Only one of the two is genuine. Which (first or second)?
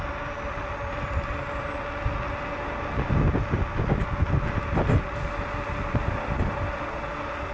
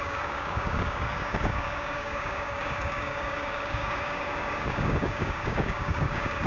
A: first